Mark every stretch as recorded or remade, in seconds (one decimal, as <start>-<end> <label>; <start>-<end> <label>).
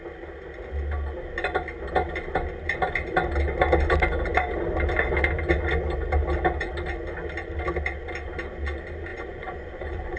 0.0-9.1 recorded; 9.1-10.2 remade